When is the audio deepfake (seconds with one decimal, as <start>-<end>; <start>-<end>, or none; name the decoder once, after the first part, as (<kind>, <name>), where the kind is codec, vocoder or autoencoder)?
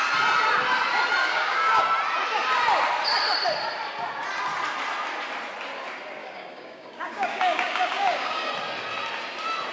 1.2-1.8 (codec, DAC); 6.2-8.5